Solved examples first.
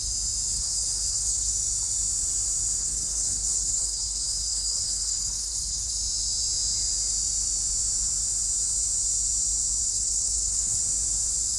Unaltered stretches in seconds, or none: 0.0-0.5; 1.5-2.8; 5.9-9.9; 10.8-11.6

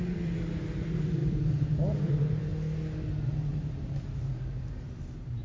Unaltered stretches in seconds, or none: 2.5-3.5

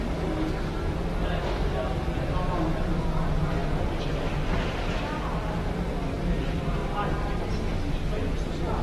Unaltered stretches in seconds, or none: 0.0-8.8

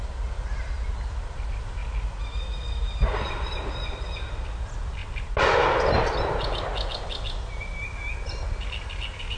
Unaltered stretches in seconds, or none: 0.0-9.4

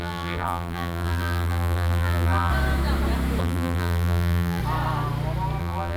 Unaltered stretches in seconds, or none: 2.5-3.4; 4.6-5.6

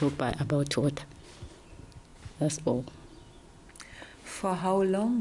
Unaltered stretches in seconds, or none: 0.0-2.1; 3.1-4.1; 4.6-5.2

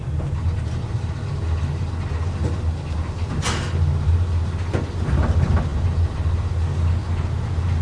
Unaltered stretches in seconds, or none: 0.0-7.8